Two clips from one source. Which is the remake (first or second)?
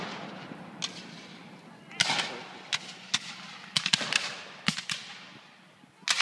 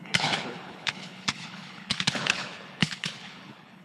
second